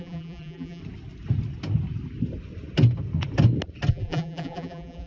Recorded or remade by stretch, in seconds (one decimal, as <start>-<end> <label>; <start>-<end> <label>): 0.0-0.8 remade; 0.8-3.9 recorded; 3.9-5.1 remade